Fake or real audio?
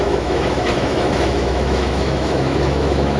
fake